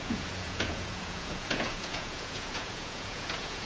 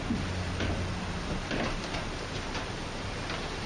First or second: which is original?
second